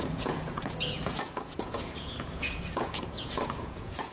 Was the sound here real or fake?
fake